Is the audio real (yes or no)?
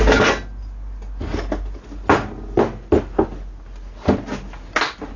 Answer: yes